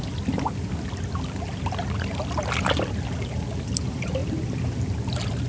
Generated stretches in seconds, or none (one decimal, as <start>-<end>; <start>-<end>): none